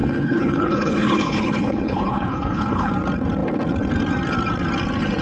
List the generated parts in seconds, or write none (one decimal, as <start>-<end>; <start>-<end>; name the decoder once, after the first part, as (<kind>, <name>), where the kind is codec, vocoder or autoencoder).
0.0-2.9 (codec, HILCodec)